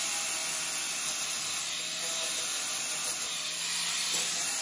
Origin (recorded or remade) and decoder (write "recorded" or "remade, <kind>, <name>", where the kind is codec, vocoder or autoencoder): recorded